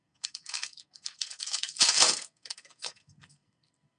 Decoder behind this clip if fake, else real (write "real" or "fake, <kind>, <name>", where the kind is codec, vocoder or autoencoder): fake, codec, SNAC